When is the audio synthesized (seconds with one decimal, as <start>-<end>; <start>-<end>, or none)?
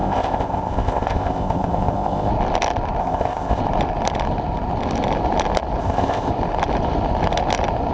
0.0-2.3; 3.0-3.6; 5.8-6.3